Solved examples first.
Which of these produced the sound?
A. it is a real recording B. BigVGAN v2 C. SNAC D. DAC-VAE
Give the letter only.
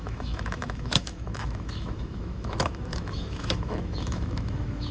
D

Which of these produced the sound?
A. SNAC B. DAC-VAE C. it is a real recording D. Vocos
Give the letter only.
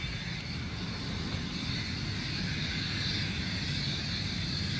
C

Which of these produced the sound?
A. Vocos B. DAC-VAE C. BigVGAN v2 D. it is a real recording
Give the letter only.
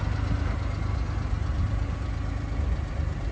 D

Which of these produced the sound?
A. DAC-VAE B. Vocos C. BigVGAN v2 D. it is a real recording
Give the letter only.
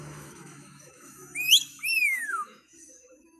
A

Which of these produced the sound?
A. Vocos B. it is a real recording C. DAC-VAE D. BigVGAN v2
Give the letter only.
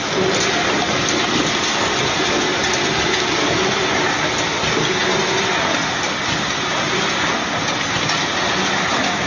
B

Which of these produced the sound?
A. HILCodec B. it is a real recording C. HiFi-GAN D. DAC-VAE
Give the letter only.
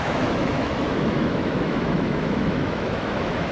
D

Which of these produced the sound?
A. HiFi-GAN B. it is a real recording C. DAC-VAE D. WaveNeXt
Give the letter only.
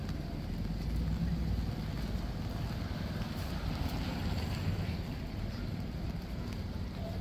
B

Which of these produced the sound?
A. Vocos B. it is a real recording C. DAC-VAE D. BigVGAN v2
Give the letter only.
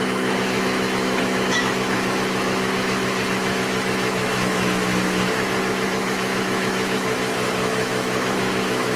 C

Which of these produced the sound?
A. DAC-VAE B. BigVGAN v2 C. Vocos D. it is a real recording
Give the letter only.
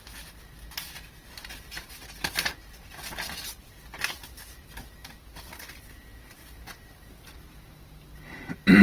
D